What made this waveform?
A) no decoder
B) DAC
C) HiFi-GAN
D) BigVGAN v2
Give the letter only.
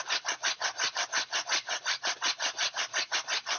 A